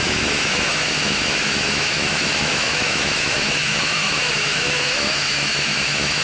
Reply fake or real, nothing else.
fake